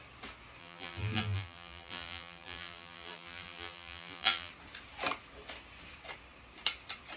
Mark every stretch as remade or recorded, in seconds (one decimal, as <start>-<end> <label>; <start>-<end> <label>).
0.0-0.6 recorded; 0.6-4.5 remade; 4.5-7.2 recorded